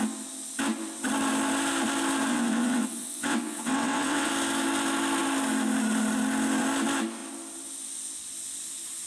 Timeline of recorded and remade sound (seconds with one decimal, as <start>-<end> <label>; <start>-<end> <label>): 0.0-2.3 recorded; 2.3-4.3 remade; 4.3-9.1 recorded